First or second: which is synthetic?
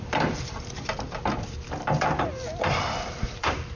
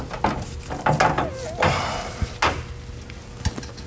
first